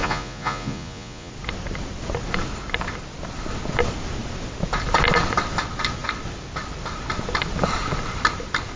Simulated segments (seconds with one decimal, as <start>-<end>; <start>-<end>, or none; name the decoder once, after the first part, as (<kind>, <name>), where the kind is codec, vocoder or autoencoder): 0.0-1.3 (vocoder, Vocos)